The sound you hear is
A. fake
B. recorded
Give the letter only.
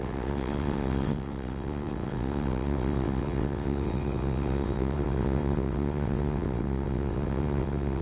A